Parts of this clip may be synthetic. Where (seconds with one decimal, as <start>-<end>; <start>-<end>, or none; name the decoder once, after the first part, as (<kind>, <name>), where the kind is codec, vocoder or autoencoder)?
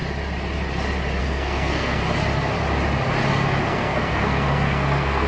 1.2-2.0 (codec, SNAC); 3.6-5.3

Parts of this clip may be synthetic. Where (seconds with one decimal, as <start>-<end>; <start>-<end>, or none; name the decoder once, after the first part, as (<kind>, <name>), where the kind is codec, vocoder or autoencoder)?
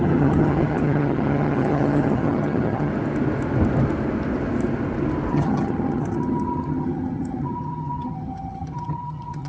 0.0-2.9 (vocoder, HiFi-GAN); 5.3-9.5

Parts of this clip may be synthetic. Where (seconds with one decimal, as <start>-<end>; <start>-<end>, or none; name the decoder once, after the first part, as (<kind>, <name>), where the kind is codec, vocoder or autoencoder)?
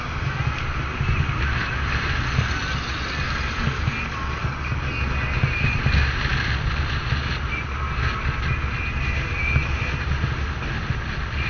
none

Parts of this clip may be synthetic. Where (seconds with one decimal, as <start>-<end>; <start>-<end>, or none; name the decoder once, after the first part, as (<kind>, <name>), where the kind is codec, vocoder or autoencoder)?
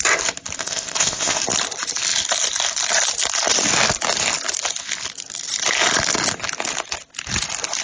0.6-1.4 (codec, ZipCodec)